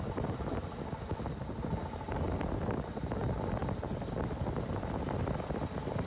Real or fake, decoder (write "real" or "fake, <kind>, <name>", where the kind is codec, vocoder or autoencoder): real